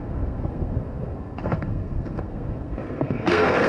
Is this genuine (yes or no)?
no